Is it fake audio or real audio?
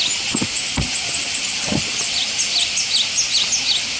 real